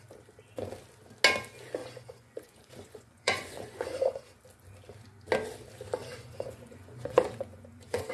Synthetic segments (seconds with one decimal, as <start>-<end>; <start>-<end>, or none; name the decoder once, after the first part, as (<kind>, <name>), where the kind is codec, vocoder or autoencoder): 1.8-4.3 (vocoder, Vocos); 6.0-8.1